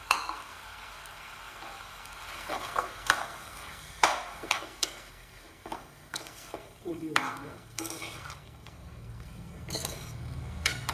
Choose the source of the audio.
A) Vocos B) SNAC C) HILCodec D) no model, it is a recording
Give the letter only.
B